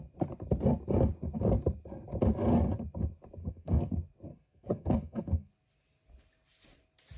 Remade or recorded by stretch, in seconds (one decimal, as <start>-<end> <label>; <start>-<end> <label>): 0.0-3.4 recorded; 3.4-3.9 remade; 3.9-4.3 recorded; 4.3-5.5 remade; 5.5-7.2 recorded